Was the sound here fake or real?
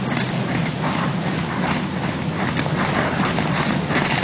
real